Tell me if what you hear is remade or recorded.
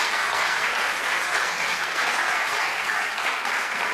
remade